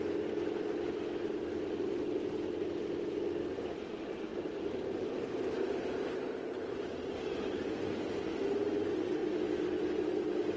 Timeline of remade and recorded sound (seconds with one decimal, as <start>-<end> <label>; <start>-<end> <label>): 0.0-10.6 recorded